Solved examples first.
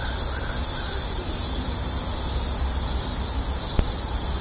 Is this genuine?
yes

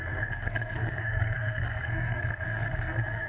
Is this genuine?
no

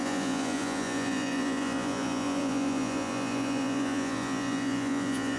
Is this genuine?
no